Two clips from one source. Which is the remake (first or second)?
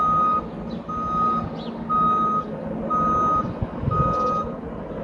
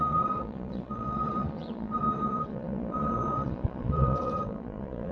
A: second